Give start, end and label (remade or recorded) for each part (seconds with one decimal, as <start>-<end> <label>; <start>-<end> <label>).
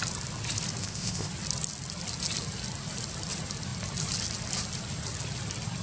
0.0-0.8 recorded; 0.8-1.3 remade; 1.3-5.8 recorded